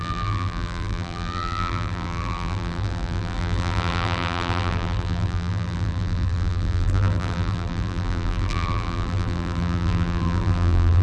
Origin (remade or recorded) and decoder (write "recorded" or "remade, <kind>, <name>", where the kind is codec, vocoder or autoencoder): remade, vocoder, BigVGAN v2